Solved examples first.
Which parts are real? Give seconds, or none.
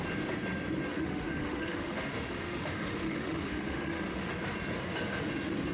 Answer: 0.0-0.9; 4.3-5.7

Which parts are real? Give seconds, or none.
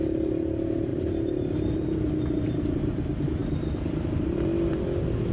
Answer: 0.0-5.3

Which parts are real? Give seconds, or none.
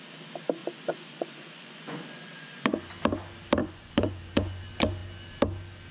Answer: 0.0-0.6; 2.9-3.6; 4.6-5.9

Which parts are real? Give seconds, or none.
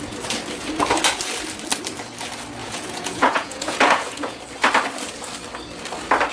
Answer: 0.0-2.6; 4.4-6.3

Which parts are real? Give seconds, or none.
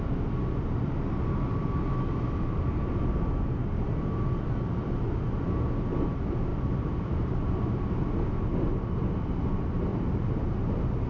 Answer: 0.0-6.5; 7.5-9.9; 10.5-11.1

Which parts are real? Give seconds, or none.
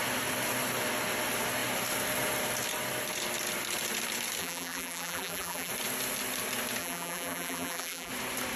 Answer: 0.0-4.4; 5.7-6.8; 8.1-8.6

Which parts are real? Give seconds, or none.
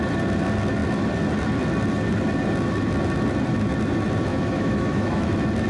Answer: 0.0-4.3; 5.3-5.7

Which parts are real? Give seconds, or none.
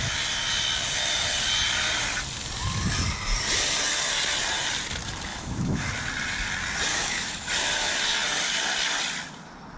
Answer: 0.0-5.3; 5.9-6.9; 7.5-9.8